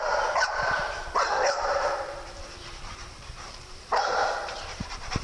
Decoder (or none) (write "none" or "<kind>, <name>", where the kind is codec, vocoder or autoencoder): vocoder, BigVGAN v2